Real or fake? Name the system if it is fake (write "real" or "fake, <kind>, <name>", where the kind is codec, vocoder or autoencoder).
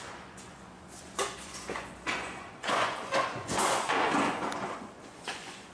fake, vocoder, Vocos